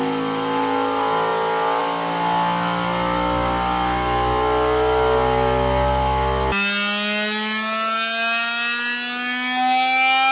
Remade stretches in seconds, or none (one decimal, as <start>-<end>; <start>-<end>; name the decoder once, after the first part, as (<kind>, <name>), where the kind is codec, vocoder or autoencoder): none

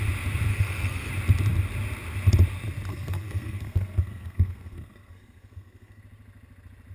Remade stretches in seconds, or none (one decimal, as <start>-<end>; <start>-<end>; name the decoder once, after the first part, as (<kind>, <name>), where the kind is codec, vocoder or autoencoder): 0.5-1.1 (codec, SNAC); 2.9-6.0

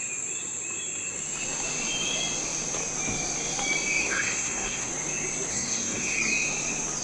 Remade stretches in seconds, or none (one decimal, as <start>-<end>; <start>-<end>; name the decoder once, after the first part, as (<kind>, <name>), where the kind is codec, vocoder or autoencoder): 4.0-4.9 (codec, SNAC); 5.5-6.2

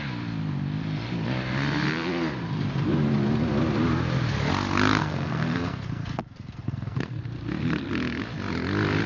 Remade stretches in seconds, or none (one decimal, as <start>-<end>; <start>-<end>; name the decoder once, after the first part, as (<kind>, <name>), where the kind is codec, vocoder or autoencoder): 5.0-7.2 (codec, SNAC)

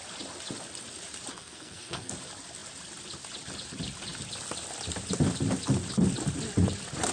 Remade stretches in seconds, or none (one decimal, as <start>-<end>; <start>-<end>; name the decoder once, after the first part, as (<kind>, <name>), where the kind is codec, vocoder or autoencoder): 1.3-2.1 (codec, SNAC)

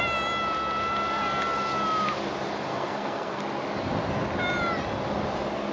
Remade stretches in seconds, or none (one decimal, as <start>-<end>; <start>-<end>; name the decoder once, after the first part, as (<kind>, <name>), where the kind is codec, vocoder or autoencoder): 2.7-3.4 (codec, SNAC)

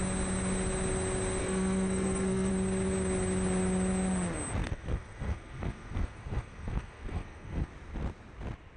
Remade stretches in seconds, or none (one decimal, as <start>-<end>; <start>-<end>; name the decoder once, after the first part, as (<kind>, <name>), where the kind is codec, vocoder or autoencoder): 1.4-2.5 (codec, SNAC); 4.6-7.7

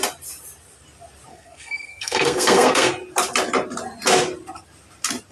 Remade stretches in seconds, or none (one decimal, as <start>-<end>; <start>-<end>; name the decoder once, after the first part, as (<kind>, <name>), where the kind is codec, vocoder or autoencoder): 1.3-2.9 (codec, SNAC)